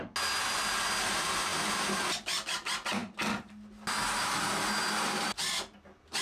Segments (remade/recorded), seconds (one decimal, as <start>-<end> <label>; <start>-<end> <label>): 0.0-6.2 recorded